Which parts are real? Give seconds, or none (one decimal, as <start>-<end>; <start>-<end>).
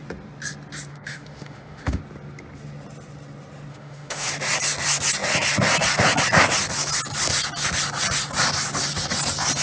0.0-0.9; 2.0-3.7; 4.3-9.6